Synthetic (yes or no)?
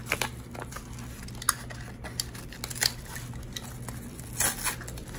no